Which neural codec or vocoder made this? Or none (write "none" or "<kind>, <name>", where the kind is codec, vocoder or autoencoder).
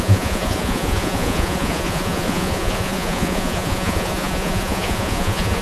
vocoder, Vocos